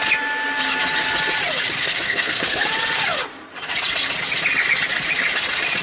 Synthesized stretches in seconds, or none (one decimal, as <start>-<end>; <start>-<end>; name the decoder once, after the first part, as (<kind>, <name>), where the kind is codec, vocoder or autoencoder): 1.8-2.6 (codec, SNAC)